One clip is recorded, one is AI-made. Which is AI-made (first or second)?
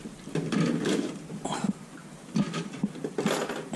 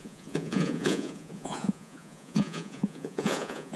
second